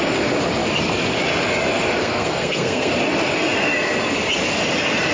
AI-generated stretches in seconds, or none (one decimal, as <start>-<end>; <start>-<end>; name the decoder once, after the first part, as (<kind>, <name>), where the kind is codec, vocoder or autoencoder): 2.0-2.9 (codec, SNAC)